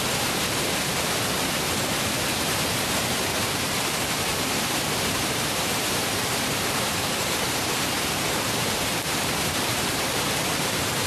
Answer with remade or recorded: remade